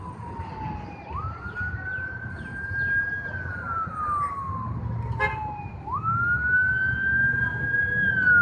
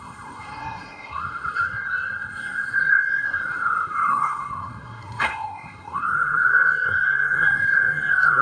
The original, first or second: first